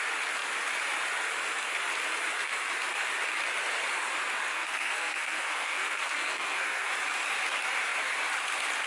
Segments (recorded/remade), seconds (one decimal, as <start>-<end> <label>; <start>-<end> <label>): 0.0-4.5 recorded; 4.5-6.9 remade; 6.9-8.9 recorded